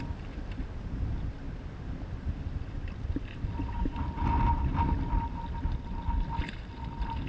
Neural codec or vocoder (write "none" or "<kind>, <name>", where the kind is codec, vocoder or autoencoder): none